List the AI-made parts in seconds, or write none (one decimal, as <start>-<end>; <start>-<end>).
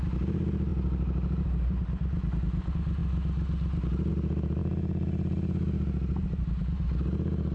none